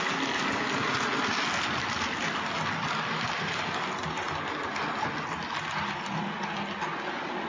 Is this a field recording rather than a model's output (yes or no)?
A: yes